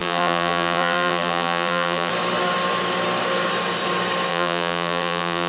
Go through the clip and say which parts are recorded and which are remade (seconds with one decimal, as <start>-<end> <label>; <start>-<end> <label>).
0.0-2.1 remade; 2.1-4.3 recorded; 4.3-5.5 remade